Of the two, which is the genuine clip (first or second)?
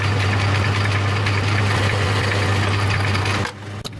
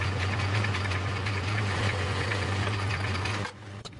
first